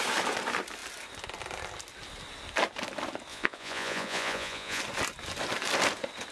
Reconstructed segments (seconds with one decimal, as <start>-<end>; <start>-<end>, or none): 3.3-4.8

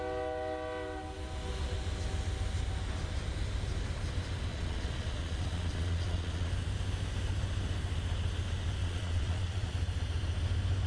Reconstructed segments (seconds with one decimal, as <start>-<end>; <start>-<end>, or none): 4.5-6.5; 8.8-9.7

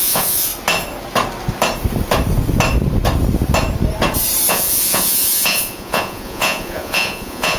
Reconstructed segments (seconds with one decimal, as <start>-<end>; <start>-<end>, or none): 0.0-0.5; 4.5-7.6

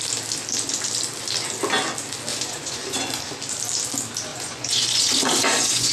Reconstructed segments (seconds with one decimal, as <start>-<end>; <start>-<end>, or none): 2.3-3.2; 4.3-5.9

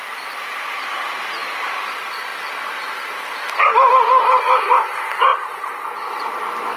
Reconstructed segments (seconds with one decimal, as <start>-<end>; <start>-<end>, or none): none